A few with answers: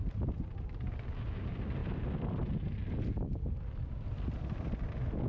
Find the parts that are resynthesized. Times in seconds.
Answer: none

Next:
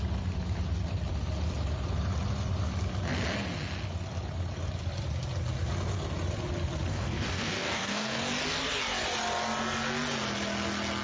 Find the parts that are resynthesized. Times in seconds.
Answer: 6.9-8.2

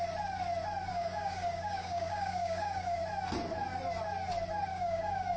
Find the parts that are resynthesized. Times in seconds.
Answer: 0.9-3.0; 4.7-5.4

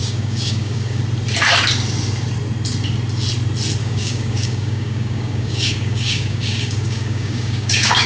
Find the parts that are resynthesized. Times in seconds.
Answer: 0.0-1.0; 3.8-8.1